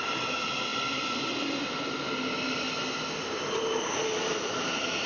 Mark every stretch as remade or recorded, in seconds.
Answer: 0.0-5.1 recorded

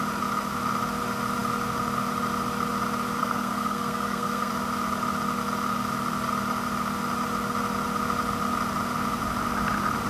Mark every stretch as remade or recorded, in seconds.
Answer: 0.0-3.2 recorded; 3.2-4.5 remade; 4.5-10.1 recorded

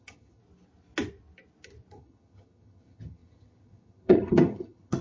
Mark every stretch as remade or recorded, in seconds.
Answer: 0.0-0.4 remade; 0.4-1.9 recorded; 1.9-5.0 remade